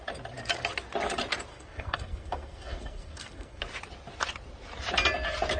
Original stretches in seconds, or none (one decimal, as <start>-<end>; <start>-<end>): 0.0-1.5; 3.6-5.6